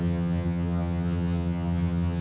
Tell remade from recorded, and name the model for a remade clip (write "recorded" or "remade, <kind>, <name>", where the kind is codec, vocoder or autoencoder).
remade, vocoder, HiFi-GAN